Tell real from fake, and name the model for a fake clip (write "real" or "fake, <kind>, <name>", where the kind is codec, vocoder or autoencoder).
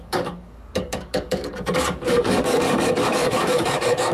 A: fake, codec, DAC